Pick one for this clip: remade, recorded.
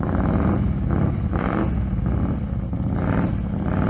recorded